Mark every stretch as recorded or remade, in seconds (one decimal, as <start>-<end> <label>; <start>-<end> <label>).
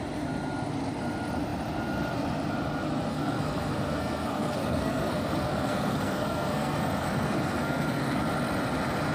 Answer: 0.0-3.1 recorded; 3.1-8.2 remade; 8.2-9.1 recorded